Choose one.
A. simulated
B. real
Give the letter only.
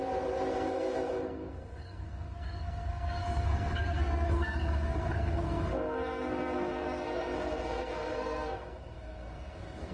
A